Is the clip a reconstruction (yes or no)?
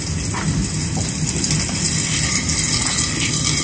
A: no